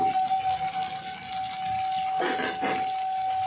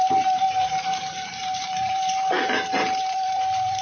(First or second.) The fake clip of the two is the second